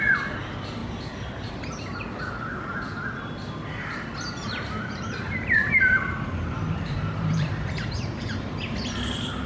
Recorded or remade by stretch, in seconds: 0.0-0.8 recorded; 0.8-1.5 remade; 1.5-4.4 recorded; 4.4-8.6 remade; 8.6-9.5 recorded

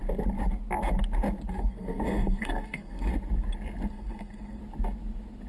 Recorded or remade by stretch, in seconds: 0.0-1.5 recorded; 1.5-3.1 remade; 3.1-3.9 recorded; 3.9-4.6 remade; 4.6-5.5 recorded

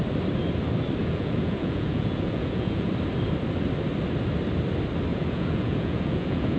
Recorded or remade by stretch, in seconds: 0.0-1.0 recorded; 1.0-2.9 remade; 2.9-5.1 recorded; 5.1-6.6 remade

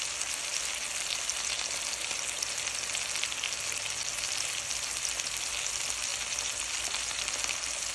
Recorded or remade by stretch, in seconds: 0.0-7.9 recorded

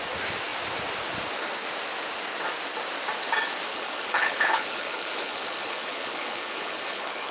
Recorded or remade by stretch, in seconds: 0.0-3.7 recorded; 3.7-7.3 remade

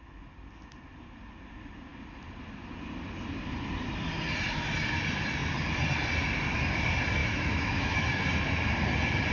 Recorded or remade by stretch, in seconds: 0.0-7.2 recorded; 7.2-8.2 remade; 8.2-9.3 recorded